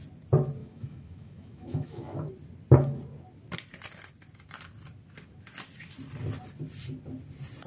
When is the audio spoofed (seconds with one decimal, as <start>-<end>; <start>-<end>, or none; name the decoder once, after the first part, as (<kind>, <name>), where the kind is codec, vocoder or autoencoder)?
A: 0.6-2.3 (autoencoder, DAC-VAE)